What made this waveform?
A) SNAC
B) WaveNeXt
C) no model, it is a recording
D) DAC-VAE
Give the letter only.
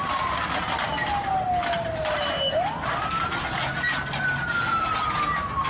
C